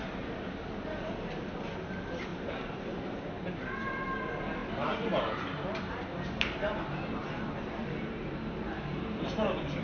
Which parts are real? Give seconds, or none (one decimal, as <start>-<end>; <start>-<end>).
0.0-2.3; 4.0-4.6